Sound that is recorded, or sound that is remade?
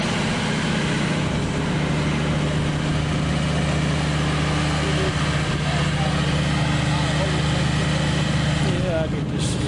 recorded